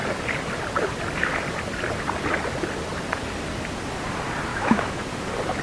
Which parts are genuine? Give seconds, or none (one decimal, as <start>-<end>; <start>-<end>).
0.0-4.5; 5.0-5.6